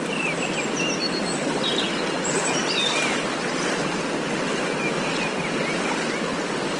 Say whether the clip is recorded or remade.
recorded